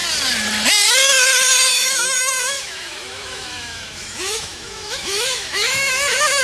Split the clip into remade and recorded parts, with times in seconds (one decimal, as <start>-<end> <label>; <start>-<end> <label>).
0.0-1.7 recorded; 1.7-6.4 remade